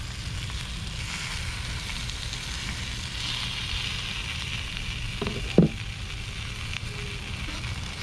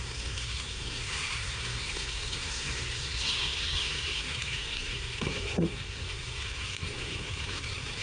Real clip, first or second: first